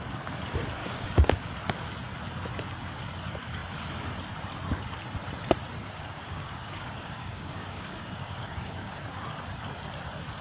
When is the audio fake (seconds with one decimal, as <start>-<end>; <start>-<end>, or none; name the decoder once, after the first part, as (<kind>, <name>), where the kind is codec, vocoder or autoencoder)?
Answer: 0.8-1.5 (codec, DAC); 5.8-9.0